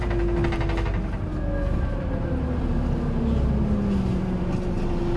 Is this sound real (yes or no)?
yes